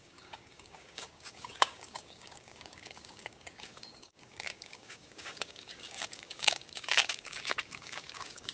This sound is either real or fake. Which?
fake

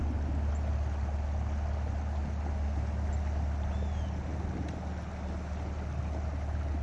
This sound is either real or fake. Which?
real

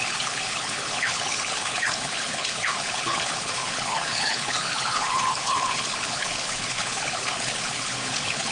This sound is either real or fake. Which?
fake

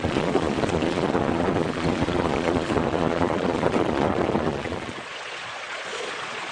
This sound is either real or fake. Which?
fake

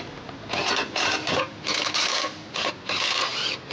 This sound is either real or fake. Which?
real